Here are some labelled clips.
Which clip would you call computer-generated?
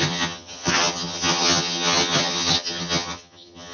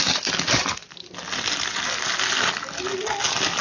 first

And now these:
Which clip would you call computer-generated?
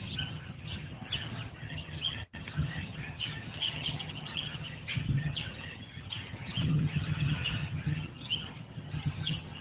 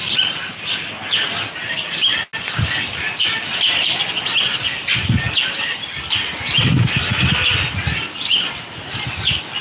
first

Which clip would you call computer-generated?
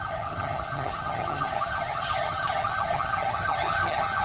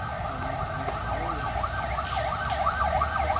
first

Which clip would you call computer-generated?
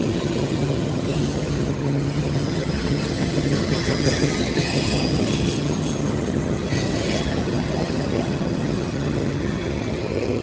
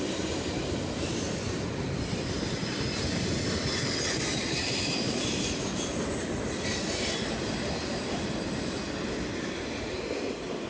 first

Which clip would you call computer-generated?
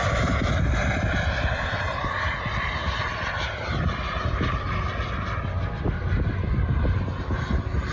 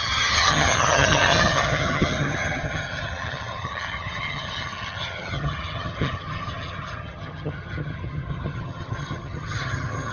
second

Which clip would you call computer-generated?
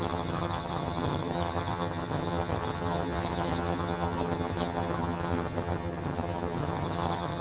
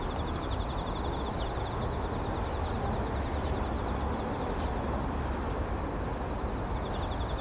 first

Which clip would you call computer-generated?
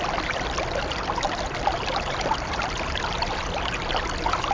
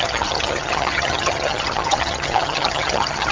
second